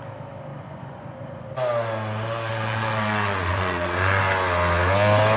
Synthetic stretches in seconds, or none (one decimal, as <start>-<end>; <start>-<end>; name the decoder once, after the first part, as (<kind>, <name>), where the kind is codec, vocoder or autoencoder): 0.5-1.4 (vocoder, Vocos); 2.5-4.2